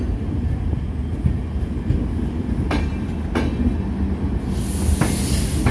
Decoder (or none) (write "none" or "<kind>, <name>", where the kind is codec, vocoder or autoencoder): none